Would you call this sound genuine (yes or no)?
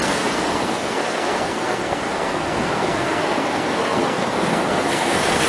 no